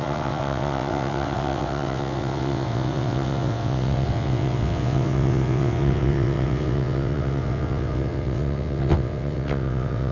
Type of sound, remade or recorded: remade